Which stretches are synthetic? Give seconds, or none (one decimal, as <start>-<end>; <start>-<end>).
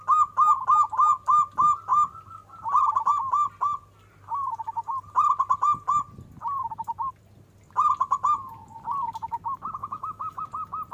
9.8-10.4